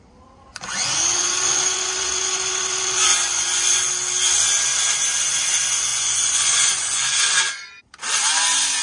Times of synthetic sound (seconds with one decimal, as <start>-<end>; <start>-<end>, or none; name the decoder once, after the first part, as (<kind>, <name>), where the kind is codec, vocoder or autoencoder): 0.5-3.9 (vocoder, Vocos); 5.9-7.8